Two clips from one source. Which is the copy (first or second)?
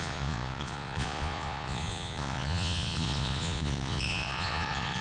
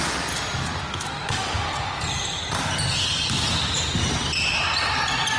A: first